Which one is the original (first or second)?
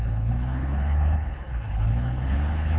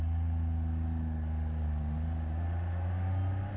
second